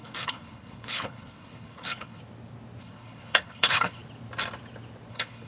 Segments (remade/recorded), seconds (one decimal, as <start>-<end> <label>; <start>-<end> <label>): 0.0-2.2 remade; 2.2-2.8 recorded; 2.8-4.0 remade; 4.0-5.1 recorded; 5.1-5.5 remade